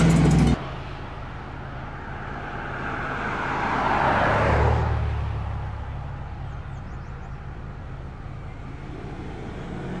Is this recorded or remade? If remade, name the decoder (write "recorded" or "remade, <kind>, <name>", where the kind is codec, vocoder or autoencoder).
recorded